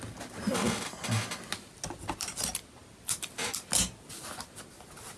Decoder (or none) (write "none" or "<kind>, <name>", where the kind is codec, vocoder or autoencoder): none